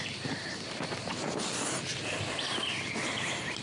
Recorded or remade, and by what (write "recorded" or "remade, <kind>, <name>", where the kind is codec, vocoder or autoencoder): remade, vocoder, BigVGAN v2